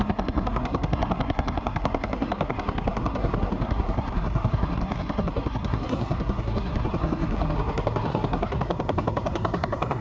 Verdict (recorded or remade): remade